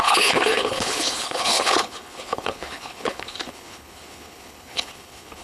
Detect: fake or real fake